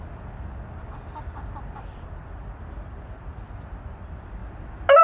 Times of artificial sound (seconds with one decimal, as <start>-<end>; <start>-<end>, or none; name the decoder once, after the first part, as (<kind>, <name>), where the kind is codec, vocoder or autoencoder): none